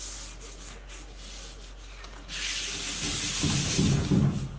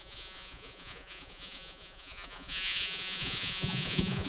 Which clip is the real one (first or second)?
first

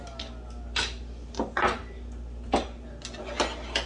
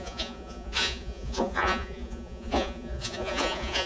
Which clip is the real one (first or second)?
first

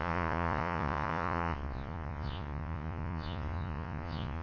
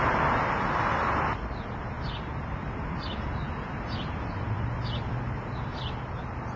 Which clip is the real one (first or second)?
second